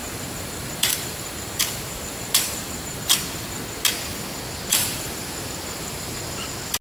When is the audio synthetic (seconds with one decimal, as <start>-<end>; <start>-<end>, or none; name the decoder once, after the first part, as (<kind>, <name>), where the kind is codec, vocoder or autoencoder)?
0.0-3.0 (vocoder, BigVGAN v2); 4.7-6.2